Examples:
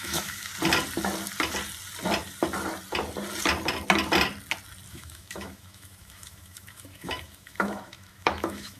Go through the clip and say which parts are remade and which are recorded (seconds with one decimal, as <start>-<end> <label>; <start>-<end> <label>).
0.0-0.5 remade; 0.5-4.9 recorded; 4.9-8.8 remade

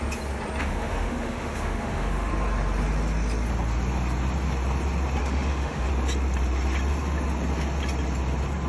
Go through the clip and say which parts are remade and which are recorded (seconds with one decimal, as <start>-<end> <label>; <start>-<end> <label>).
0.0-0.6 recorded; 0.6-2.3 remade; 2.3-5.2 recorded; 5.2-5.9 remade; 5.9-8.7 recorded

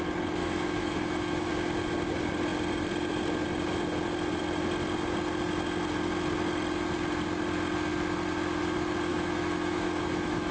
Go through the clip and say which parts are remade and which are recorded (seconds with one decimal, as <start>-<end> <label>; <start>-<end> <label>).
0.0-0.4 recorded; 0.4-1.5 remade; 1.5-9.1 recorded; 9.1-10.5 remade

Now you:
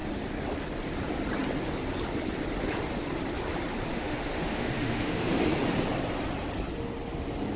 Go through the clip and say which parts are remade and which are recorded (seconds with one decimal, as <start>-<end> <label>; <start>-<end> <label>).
0.0-3.9 recorded; 3.9-5.4 remade; 5.4-7.6 recorded

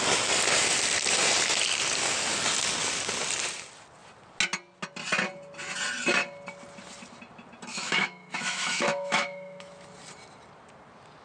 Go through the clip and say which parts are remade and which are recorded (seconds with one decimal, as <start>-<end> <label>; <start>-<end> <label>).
0.0-7.7 recorded; 7.7-9.7 remade; 9.7-11.2 recorded

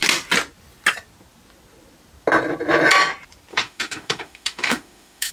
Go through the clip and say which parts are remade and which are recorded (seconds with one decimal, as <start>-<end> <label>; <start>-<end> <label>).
0.0-3.5 recorded; 3.5-5.3 remade

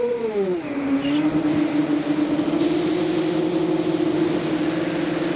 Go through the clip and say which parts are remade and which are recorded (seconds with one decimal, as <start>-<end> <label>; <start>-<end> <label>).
0.0-5.4 recorded